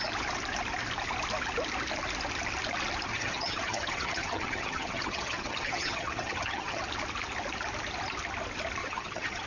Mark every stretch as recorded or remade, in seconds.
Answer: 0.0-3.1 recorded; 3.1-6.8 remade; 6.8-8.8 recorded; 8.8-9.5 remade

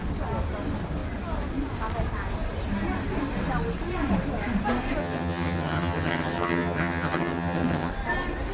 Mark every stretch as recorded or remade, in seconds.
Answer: 0.0-5.0 recorded; 5.0-7.9 remade; 7.9-8.5 recorded

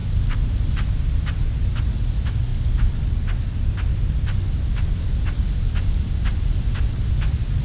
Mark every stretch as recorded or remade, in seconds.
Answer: 0.0-7.6 recorded

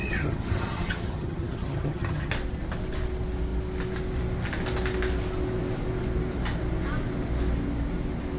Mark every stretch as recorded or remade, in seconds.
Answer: 0.0-2.3 remade; 2.3-8.4 recorded

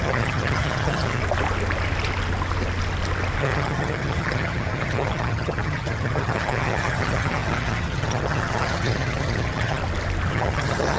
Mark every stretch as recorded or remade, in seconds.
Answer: 0.0-1.2 remade; 1.2-3.4 recorded; 3.4-9.8 remade; 9.8-10.3 recorded; 10.3-11.0 remade

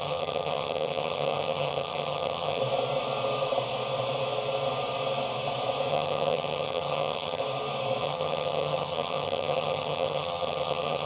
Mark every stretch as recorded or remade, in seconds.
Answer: 0.0-2.6 remade; 2.6-5.9 recorded; 5.9-7.4 remade; 7.4-8.0 recorded; 8.0-11.1 remade